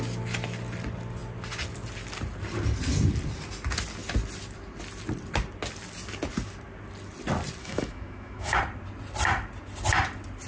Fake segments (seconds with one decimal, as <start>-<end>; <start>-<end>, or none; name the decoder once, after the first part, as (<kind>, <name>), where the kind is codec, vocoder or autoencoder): 7.6-8.6 (autoencoder, DAC-VAE)